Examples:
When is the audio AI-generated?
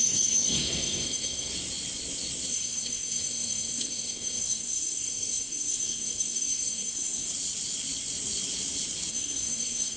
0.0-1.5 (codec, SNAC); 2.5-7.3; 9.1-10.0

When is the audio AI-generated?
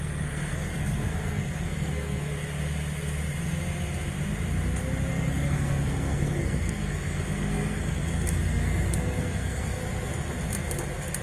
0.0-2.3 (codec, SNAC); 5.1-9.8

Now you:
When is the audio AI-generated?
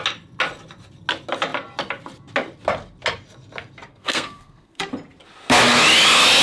3.9-4.9 (codec, SNAC)